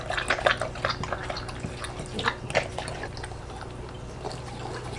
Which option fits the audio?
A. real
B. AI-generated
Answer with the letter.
A